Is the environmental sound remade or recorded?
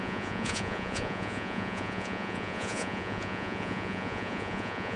remade